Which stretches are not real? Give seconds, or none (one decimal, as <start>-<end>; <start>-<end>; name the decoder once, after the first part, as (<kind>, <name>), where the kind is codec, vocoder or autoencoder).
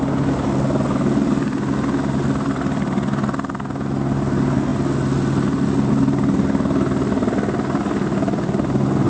none